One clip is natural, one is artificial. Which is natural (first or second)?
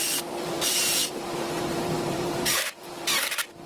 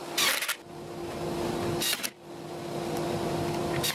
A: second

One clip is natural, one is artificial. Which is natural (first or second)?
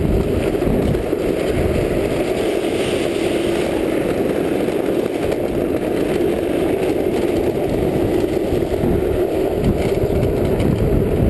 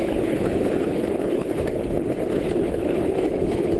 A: first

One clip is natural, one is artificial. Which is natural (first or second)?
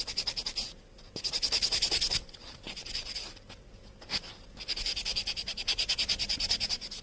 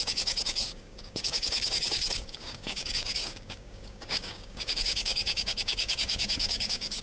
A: first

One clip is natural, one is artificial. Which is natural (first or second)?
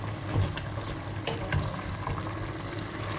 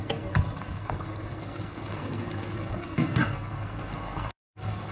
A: first